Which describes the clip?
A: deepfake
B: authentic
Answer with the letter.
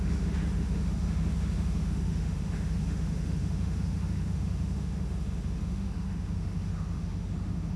A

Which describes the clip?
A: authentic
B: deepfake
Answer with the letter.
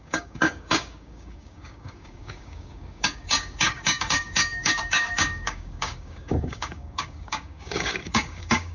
B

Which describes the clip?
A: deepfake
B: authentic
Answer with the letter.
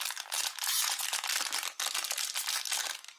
B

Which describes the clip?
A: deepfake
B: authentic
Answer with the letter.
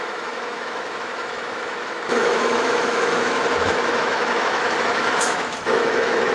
A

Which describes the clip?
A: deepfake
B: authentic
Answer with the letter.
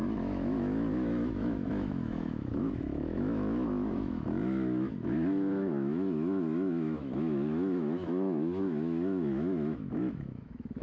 A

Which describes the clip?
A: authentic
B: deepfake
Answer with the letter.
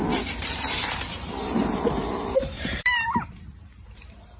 B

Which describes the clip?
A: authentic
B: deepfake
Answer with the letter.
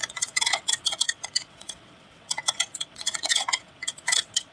B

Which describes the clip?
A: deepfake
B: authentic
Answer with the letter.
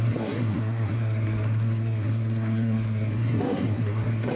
A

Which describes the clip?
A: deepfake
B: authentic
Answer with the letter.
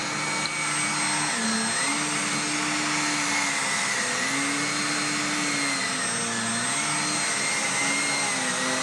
B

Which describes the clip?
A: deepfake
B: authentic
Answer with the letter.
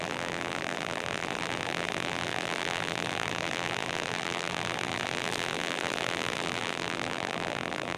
A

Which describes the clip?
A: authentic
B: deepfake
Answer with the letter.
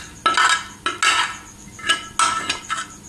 A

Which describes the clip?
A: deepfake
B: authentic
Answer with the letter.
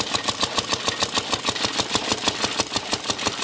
B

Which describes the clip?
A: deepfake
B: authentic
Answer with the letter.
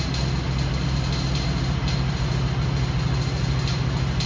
B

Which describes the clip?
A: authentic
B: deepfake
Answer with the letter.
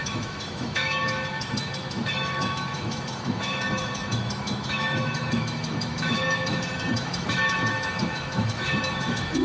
B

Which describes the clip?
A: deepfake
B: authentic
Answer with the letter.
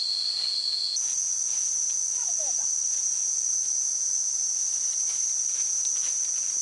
B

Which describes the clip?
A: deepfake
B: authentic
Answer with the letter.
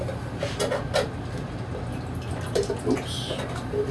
B